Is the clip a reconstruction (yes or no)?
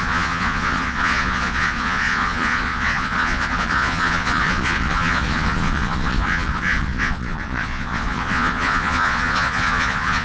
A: yes